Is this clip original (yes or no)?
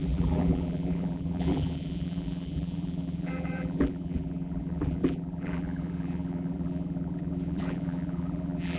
no